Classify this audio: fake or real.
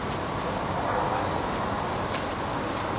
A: real